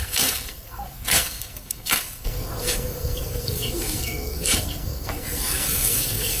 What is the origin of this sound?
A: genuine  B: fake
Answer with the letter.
B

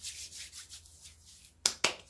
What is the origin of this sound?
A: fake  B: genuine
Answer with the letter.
B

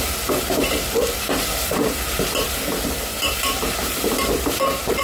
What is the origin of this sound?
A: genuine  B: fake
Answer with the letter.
B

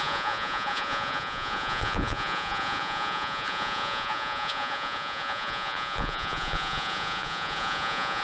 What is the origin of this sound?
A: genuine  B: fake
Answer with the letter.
B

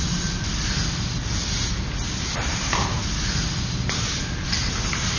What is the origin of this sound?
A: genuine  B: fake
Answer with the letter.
A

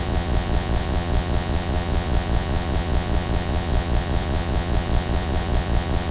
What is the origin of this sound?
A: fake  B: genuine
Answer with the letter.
A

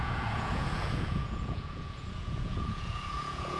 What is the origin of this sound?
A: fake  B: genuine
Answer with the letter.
A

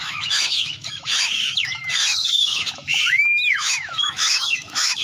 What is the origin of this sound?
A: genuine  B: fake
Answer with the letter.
B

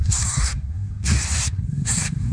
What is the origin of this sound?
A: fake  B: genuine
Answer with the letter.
A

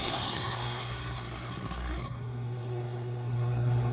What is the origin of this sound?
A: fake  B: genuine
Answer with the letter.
A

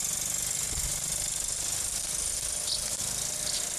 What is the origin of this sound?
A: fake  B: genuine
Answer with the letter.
B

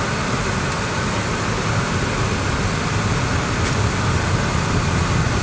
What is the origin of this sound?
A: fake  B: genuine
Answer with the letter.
B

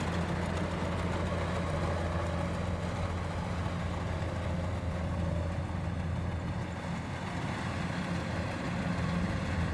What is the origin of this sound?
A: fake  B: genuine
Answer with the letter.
B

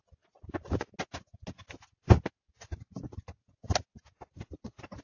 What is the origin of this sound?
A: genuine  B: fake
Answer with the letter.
A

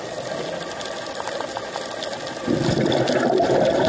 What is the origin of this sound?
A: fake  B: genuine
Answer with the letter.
B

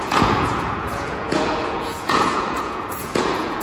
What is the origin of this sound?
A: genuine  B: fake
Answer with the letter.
B